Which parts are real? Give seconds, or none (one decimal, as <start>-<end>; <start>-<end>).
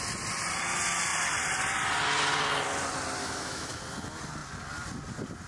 0.0-3.2; 3.8-5.5